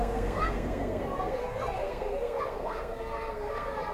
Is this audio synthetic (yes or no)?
yes